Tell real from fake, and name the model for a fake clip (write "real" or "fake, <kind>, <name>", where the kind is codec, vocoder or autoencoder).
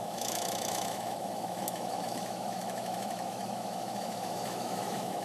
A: fake, autoencoder, DAC-VAE